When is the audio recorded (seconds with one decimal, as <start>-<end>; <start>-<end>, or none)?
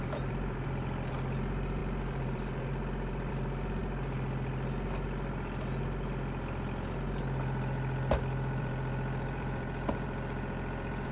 3.8-8.6